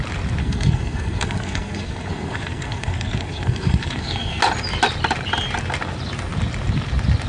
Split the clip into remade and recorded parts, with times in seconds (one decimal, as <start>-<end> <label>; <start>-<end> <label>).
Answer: 0.0-0.4 recorded; 0.4-4.4 remade; 4.4-7.3 recorded